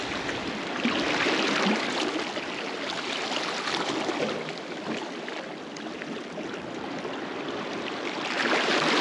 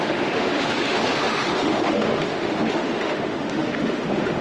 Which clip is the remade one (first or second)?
second